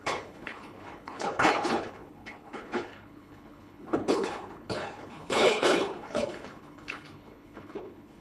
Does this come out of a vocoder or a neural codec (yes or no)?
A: yes